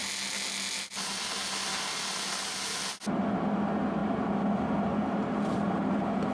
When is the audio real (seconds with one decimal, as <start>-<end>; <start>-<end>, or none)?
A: 0.0-6.3

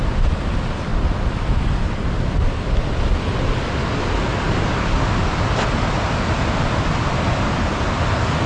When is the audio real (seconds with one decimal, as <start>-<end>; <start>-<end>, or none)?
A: 0.0-8.5

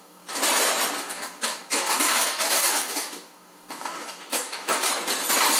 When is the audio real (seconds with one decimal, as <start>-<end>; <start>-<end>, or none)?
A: 0.4-1.0; 4.9-5.6

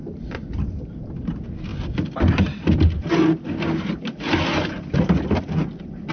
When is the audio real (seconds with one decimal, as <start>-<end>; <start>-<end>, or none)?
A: 0.0-6.1

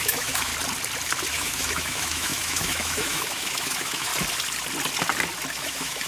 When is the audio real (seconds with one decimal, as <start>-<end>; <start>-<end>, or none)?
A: 0.5-1.3; 4.1-5.5